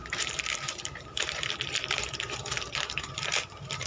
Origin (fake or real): fake